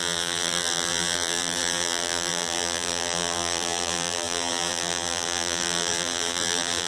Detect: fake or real fake